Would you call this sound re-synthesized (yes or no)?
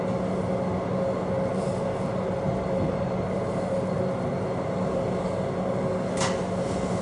no